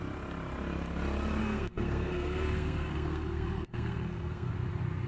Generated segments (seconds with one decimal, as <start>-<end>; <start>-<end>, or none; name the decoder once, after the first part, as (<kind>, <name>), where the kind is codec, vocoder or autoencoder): 1.4-4.5 (codec, SNAC)